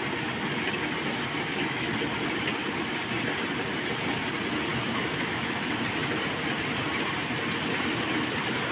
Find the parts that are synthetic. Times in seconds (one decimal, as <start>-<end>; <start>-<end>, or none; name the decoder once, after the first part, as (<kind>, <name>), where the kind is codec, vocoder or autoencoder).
1.3-1.9 (autoencoder, DAC-VAE); 4.7-5.6